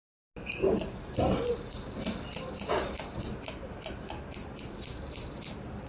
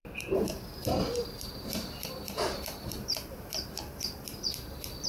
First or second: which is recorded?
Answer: first